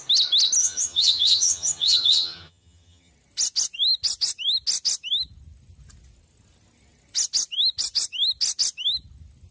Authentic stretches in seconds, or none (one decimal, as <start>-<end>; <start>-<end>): 0.0-0.6; 3.1-9.5